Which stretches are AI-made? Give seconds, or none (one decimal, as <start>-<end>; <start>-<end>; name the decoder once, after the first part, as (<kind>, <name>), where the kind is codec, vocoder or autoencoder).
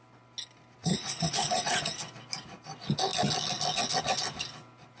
0.8-1.8 (vocoder, Vocos)